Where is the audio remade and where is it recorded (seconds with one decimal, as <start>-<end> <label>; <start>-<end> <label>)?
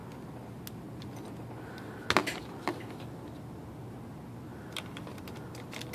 0.0-4.5 recorded; 4.5-5.5 remade; 5.5-5.9 recorded